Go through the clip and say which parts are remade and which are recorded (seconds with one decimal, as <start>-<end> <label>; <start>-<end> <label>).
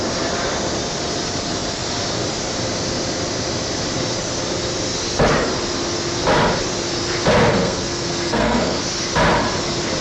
0.0-7.5 recorded; 7.5-8.8 remade; 8.8-10.0 recorded